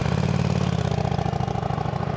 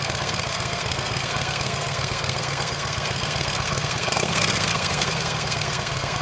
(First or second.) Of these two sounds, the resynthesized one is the second